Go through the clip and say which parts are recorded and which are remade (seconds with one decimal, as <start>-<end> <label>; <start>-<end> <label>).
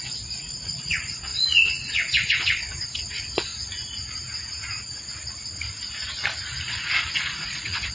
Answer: 0.0-3.5 remade; 3.5-6.6 recorded; 6.6-7.9 remade